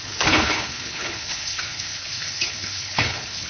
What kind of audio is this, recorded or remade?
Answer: remade